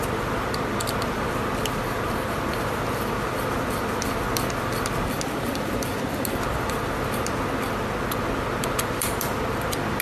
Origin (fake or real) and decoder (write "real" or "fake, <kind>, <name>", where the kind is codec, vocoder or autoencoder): real